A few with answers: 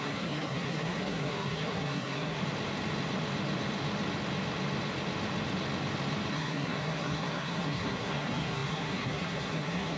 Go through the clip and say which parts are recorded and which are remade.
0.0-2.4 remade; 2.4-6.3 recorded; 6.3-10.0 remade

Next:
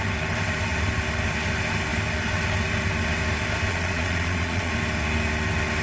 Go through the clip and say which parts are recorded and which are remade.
0.0-3.7 recorded; 3.7-4.7 remade; 4.7-5.8 recorded

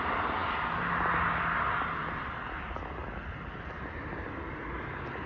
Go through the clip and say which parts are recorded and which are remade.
0.0-5.3 recorded

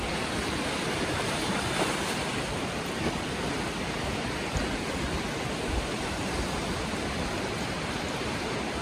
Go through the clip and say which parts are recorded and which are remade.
0.0-2.3 remade; 2.3-6.6 recorded; 6.6-8.8 remade

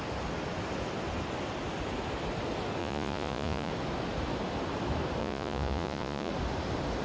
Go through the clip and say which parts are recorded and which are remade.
0.0-2.8 recorded; 2.8-3.7 remade; 3.7-5.2 recorded; 5.2-6.3 remade; 6.3-7.0 recorded

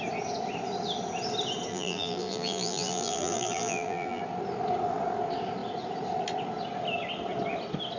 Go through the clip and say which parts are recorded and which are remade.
0.0-1.7 recorded; 1.7-4.2 remade; 4.2-8.0 recorded

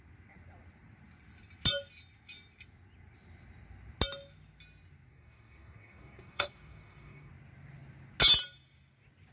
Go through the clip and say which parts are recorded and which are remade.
0.0-5.1 recorded; 5.1-7.3 remade; 7.3-9.3 recorded

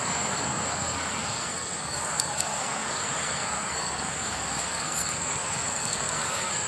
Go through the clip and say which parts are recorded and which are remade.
0.0-6.7 remade